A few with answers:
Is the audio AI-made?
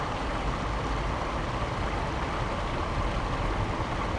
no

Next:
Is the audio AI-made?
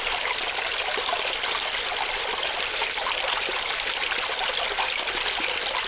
no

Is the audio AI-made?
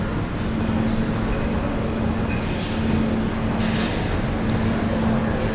no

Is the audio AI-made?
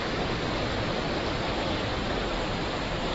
no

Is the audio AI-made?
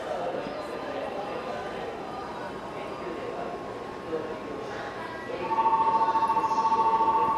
no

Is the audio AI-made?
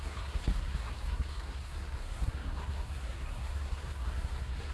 yes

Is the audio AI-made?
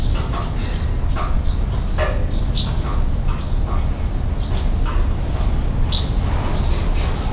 no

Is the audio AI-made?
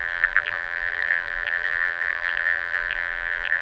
yes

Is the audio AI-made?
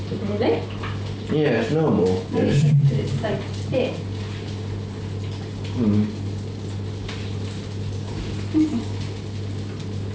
no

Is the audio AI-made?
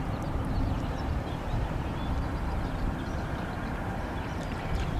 yes